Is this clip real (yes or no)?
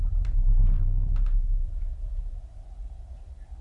yes